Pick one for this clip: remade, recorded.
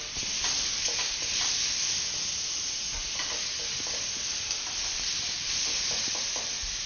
recorded